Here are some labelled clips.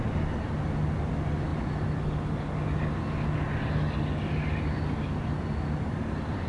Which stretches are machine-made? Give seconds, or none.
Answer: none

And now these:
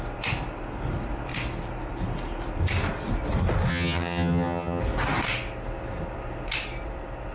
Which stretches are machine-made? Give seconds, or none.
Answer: 3.7-4.8 (vocoder, HiFi-GAN)

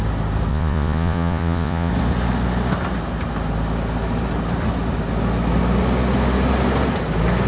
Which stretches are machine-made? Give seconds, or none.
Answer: 0.5-1.9 (vocoder, Vocos)

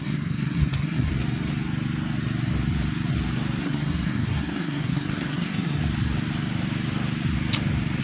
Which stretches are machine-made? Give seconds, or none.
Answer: 0.0-1.1 (codec, SNAC); 3.6-5.8

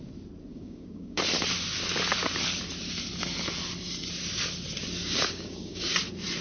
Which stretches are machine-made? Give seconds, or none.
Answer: 0.5-1.2 (codec, DAC); 5.0-5.8

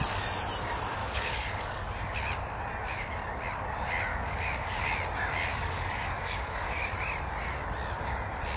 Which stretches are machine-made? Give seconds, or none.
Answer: 1.0-1.9 (codec, DAC); 4.1-4.8; 5.5-6.8

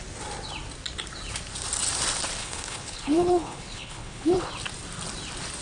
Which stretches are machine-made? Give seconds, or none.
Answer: 2.4-4.5 (codec, HILCodec)

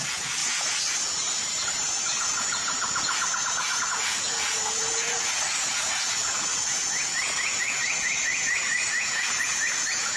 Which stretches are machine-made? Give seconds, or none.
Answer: 0.0-10.2 (vocoder, Vocos)